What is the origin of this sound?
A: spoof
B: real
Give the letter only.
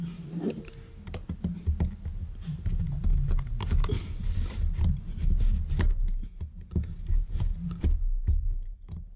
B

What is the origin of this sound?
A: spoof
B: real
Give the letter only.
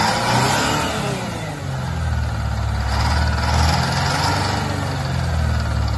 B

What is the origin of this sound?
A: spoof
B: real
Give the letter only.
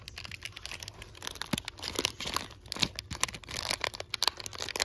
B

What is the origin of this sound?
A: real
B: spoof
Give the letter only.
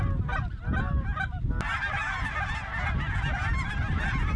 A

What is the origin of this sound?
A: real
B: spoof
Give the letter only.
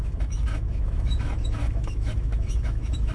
B